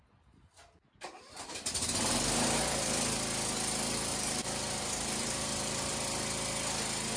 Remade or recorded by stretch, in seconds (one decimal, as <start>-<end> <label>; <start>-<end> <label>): 0.0-4.1 recorded; 4.1-6.2 remade; 6.2-7.2 recorded